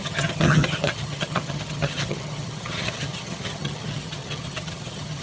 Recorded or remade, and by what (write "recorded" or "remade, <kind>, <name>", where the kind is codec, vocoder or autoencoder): remade, vocoder, HiFi-GAN